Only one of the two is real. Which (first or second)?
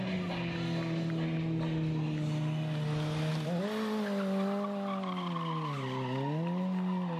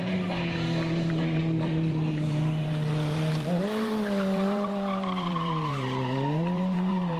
first